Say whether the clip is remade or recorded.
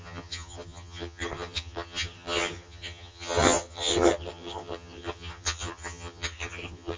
remade